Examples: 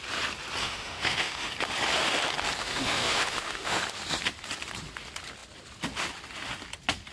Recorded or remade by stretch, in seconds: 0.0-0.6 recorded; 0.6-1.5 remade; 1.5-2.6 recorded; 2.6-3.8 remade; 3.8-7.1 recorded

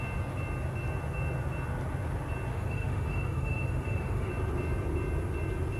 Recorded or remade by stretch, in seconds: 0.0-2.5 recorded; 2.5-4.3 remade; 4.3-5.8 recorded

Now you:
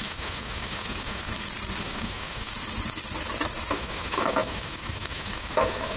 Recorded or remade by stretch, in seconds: 0.0-1.3 remade; 1.3-1.8 recorded; 1.8-2.5 remade; 2.5-3.7 recorded; 3.7-6.0 remade